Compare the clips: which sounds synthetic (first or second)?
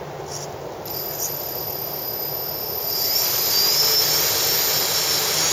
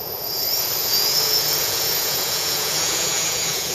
second